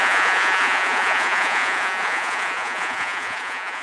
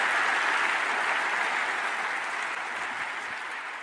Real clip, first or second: second